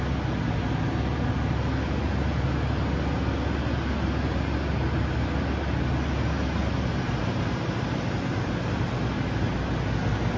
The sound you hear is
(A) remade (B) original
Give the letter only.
B